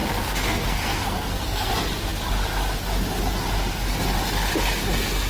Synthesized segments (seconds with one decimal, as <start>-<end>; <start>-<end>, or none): 0.0-1.7